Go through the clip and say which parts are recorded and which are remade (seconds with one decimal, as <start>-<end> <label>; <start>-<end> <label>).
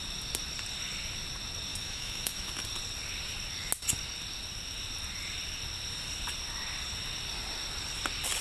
0.0-1.7 recorded; 1.7-2.5 remade; 2.5-8.4 recorded